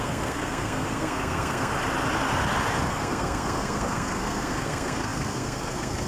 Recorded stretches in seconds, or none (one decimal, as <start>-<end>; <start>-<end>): 1.7-2.9